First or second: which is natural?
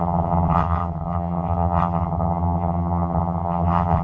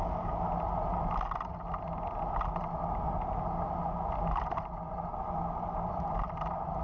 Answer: second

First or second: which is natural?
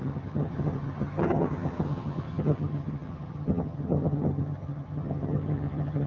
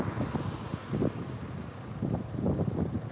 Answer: second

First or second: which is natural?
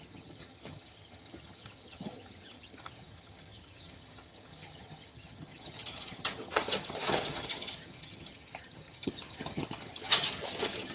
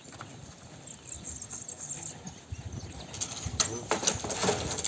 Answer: second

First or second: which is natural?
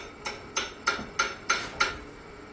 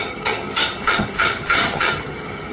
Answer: first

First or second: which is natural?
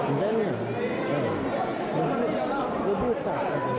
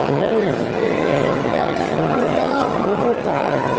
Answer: first